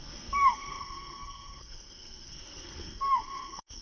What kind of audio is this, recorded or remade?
remade